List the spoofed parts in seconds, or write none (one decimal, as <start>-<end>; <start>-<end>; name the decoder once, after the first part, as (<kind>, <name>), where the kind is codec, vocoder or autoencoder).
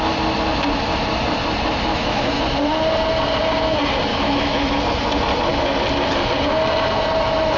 1.9-2.4 (autoencoder, DAC-VAE); 4.1-4.8